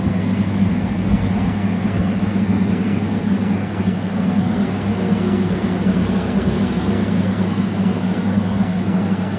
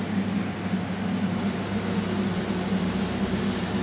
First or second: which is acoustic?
second